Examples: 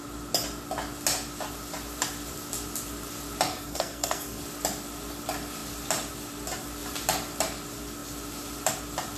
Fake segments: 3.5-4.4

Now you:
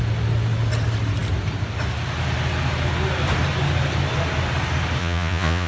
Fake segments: 5.0-5.7